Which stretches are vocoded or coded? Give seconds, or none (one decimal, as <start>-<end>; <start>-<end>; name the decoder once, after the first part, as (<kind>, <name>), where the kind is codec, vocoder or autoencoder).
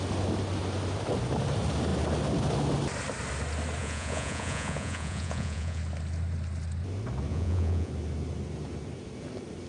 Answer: 3.8-5.8 (vocoder, Vocos); 7.3-7.9